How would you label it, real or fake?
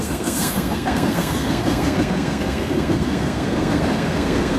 fake